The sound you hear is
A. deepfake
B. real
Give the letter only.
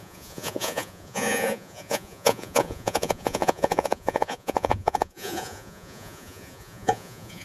A